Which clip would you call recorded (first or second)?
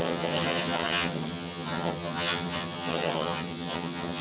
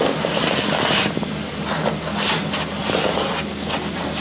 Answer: second